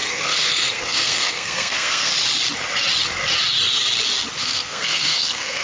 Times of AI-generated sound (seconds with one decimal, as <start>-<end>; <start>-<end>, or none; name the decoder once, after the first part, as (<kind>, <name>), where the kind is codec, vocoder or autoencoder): 0.0-2.1 (codec, SNAC); 4.4-5.6

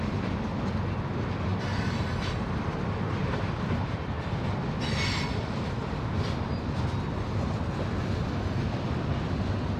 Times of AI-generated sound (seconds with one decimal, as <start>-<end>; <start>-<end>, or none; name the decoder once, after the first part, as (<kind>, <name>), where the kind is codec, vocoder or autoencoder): none

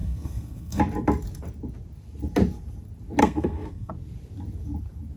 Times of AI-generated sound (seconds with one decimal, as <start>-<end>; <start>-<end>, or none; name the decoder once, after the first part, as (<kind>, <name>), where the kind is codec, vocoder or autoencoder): 0.0-0.8 (codec, SNAC); 3.2-3.9